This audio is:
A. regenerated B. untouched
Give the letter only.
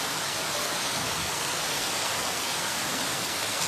A